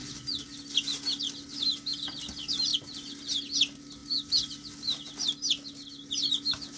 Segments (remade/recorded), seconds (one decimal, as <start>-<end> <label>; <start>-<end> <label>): 0.0-6.8 recorded